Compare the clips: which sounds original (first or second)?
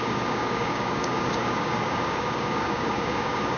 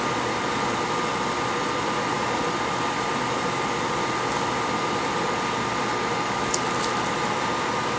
second